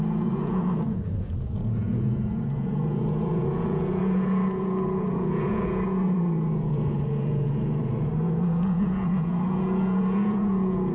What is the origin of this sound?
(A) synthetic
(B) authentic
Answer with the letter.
A